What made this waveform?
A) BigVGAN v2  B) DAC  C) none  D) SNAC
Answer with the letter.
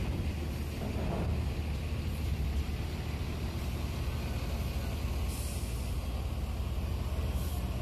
C